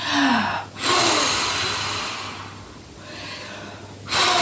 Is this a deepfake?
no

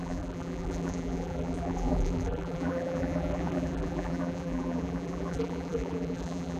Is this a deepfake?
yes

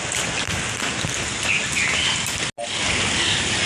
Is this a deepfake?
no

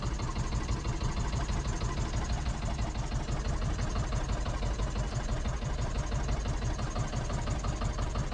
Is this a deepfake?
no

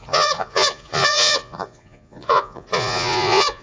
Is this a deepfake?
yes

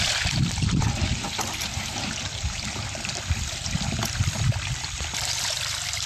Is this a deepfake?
yes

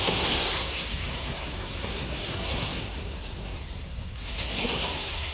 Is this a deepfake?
yes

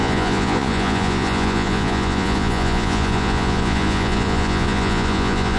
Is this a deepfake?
yes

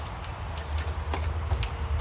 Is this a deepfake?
no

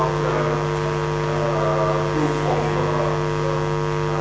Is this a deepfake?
no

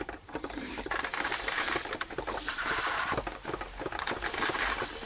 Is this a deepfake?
yes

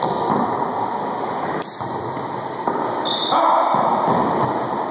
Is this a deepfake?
no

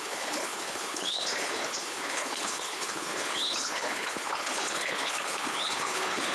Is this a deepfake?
yes